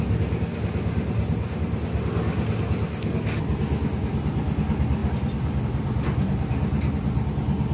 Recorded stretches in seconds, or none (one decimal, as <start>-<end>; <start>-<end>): 0.0-7.7

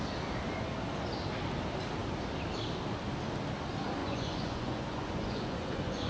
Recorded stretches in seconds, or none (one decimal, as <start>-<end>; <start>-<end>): 0.0-4.0

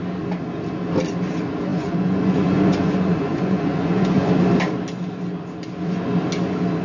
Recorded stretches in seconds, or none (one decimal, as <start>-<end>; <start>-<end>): 0.0-1.7; 4.3-6.8

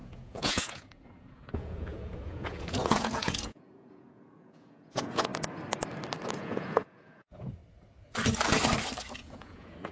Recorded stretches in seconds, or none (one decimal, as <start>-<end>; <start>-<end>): 5.3-6.3; 7.6-9.1

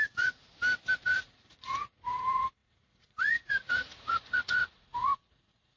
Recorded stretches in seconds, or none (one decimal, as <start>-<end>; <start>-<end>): 0.5-1.0